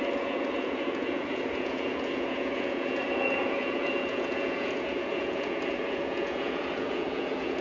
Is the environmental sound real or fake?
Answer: fake